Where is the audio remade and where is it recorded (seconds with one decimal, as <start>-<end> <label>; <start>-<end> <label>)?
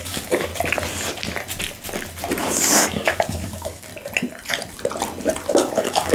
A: 0.0-0.5 remade; 0.5-2.4 recorded; 2.4-3.9 remade; 3.9-5.5 recorded; 5.5-6.1 remade